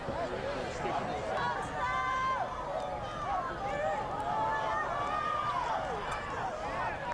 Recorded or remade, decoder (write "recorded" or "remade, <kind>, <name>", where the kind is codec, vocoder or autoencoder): recorded